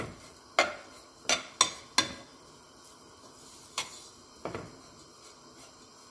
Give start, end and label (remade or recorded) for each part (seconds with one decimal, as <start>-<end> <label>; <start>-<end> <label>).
0.0-6.1 recorded